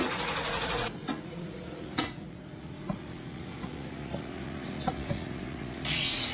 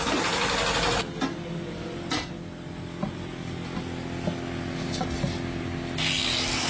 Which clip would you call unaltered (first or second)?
second